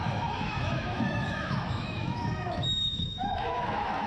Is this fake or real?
fake